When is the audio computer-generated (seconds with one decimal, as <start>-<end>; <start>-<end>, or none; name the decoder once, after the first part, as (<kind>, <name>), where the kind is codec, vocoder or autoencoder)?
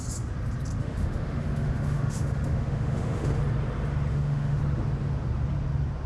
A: 0.8-3.4 (autoencoder, DAC-VAE); 4.1-4.6